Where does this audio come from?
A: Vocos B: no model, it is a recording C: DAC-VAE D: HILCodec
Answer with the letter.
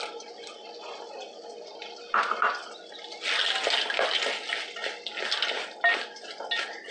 B